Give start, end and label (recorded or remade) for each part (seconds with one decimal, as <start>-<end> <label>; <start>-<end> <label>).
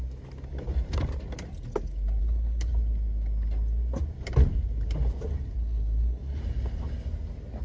0.0-2.2 recorded; 2.2-2.7 remade; 2.7-5.6 recorded; 5.6-6.4 remade; 6.4-7.6 recorded